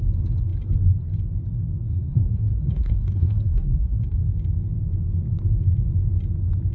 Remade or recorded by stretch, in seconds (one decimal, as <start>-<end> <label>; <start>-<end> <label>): 0.0-1.9 recorded; 1.9-4.2 remade; 4.2-6.7 recorded